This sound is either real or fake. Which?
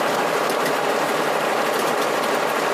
real